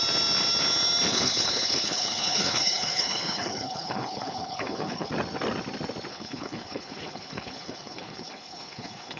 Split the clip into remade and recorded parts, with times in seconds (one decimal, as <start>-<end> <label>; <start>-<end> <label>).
0.0-1.1 recorded; 1.1-5.1 remade; 5.1-6.1 recorded; 6.1-9.2 remade

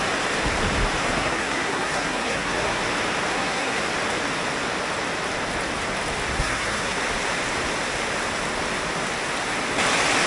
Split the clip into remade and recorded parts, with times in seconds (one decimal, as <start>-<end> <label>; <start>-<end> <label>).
0.0-1.0 recorded; 1.0-2.8 remade; 2.8-3.3 recorded; 3.3-3.8 remade; 3.8-6.3 recorded; 6.3-7.0 remade; 7.0-10.3 recorded

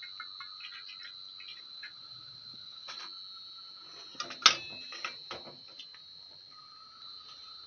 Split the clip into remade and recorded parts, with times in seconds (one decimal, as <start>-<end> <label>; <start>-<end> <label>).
0.0-1.5 recorded; 1.5-3.0 remade; 3.0-7.7 recorded